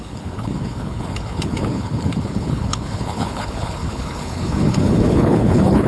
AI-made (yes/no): yes